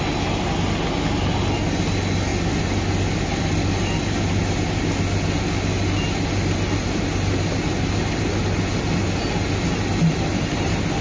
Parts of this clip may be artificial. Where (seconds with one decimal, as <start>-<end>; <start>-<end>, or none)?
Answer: none